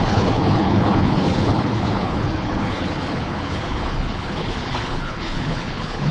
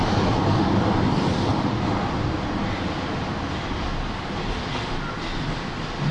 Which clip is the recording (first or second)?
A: second